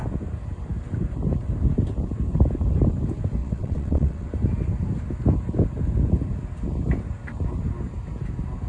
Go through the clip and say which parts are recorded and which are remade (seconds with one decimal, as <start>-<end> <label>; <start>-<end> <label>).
0.0-3.4 recorded; 3.4-4.3 remade; 4.3-8.7 recorded